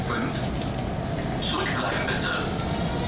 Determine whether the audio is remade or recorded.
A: recorded